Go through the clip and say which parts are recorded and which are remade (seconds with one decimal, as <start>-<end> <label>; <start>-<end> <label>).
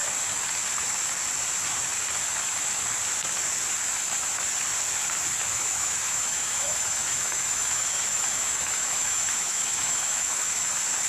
0.0-5.5 recorded; 5.5-10.7 remade; 10.7-11.1 recorded